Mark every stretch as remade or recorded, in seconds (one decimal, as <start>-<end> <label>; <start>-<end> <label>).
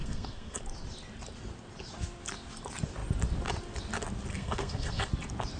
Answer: 0.0-0.6 remade; 0.6-4.3 recorded; 4.3-5.1 remade; 5.1-5.6 recorded